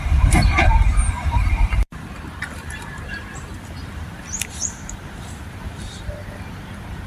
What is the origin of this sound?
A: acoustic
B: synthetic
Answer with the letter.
B